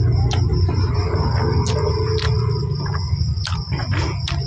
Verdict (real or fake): real